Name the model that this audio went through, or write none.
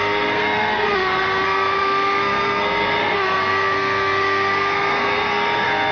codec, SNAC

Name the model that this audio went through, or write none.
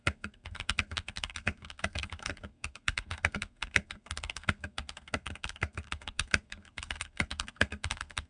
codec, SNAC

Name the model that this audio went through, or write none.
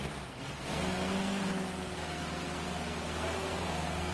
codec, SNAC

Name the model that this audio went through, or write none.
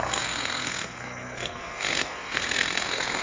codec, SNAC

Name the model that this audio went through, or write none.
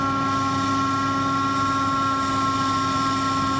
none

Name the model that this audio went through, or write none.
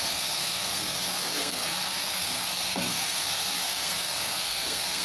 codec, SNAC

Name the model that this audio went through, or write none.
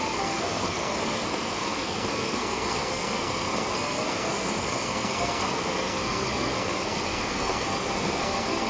codec, SNAC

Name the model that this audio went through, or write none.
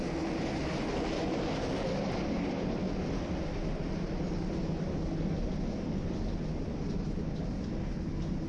none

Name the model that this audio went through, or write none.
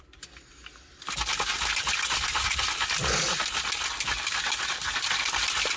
none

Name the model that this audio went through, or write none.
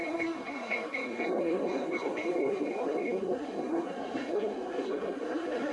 codec, SNAC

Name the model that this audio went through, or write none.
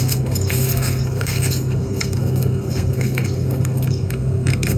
codec, SNAC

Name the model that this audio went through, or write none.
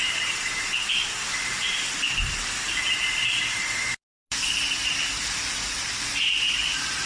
none